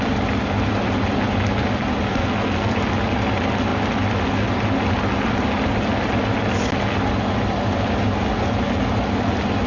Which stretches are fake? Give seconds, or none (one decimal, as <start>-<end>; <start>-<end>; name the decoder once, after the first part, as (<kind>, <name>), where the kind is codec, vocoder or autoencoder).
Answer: 2.1-2.7 (codec, SNAC)

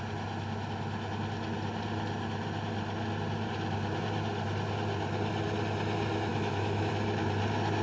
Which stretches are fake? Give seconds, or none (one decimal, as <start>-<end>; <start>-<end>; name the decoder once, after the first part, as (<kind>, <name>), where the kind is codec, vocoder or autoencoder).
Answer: 6.3-6.9 (autoencoder, DAC-VAE)

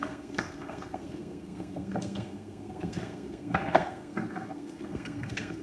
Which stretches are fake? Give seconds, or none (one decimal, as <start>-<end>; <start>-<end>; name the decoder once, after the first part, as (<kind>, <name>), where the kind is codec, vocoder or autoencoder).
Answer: 0.0-5.6 (codec, SNAC)

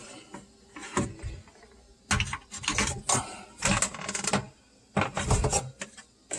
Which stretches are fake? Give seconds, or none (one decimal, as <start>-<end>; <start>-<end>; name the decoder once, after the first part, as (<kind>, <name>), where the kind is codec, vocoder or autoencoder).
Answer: none